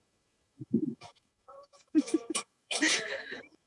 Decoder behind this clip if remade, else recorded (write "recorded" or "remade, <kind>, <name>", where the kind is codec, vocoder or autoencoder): remade, autoencoder, DAC-VAE